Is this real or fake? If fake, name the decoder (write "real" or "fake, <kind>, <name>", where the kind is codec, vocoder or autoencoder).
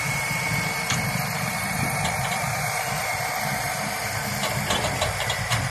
fake, vocoder, BigVGAN v2